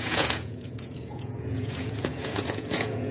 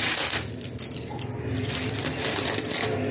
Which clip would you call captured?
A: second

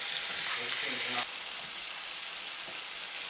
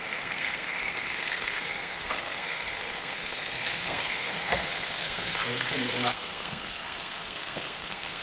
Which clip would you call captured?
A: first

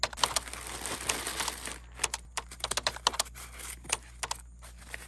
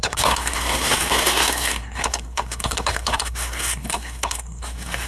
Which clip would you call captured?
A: first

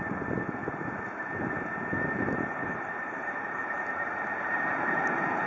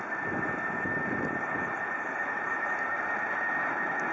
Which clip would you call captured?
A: second